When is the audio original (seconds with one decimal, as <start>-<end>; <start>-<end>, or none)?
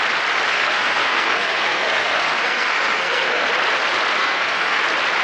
0.0-0.5; 3.5-4.2; 4.8-5.2